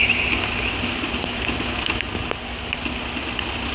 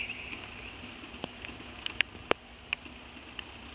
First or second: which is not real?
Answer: second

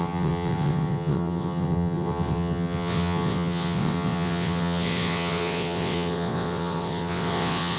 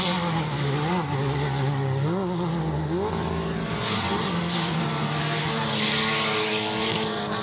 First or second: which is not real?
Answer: first